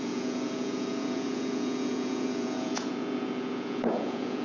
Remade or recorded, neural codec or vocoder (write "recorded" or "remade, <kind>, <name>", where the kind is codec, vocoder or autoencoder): remade, vocoder, Vocos